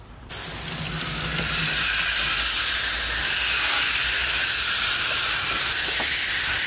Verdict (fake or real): real